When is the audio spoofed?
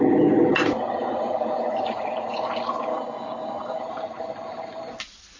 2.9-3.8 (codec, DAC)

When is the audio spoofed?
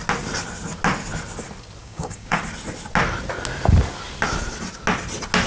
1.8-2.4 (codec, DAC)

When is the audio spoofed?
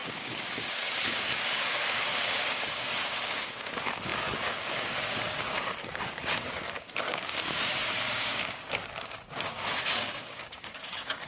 0.0-11.3 (codec, DAC)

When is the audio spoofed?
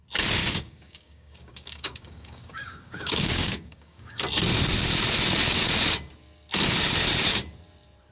0.4-4.2 (codec, DAC)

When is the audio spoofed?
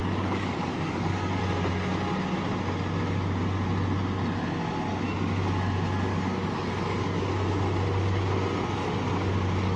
0.0-1.4 (codec, DAC); 6.1-7.3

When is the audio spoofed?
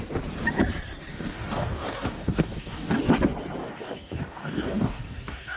1.1-3.0 (codec, DAC); 3.6-5.6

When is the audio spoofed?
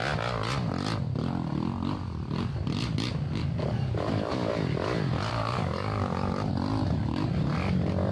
3.4-4.5 (codec, DAC); 5.3-6.5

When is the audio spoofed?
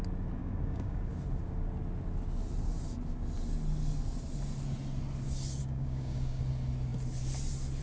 0.4-1.1 (codec, DAC); 5.6-6.4